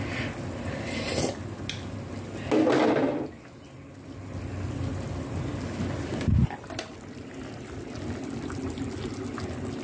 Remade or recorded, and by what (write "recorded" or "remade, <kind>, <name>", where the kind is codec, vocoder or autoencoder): recorded